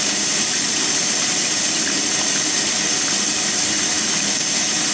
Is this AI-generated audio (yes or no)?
no